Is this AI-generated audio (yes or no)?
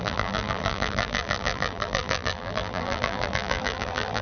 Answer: yes